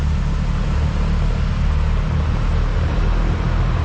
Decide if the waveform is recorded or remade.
recorded